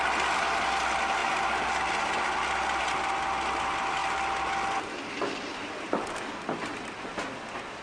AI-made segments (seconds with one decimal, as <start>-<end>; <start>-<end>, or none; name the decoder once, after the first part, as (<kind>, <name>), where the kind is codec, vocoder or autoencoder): none